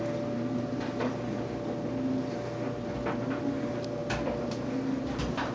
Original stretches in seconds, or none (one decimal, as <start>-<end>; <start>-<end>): 0.0-5.5